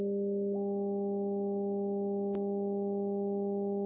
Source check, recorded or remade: recorded